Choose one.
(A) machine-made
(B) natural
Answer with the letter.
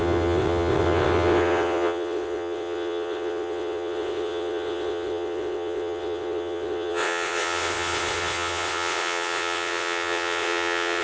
A